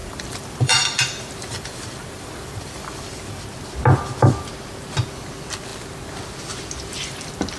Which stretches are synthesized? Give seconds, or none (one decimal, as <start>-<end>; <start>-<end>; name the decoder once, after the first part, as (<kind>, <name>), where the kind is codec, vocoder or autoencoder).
0.0-3.4 (vocoder, BigVGAN v2)